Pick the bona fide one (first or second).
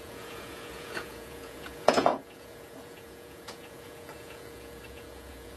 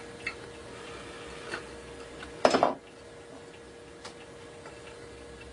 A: second